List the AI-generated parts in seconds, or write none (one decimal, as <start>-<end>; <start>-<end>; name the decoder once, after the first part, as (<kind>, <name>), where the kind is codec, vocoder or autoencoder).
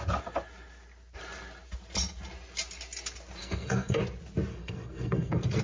3.4-4.0 (codec, SNAC); 4.5-5.6